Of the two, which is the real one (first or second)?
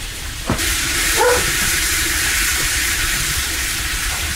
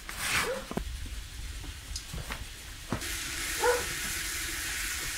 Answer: second